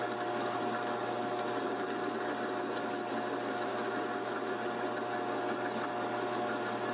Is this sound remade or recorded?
recorded